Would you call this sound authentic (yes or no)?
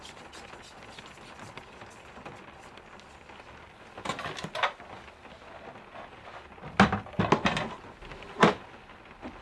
yes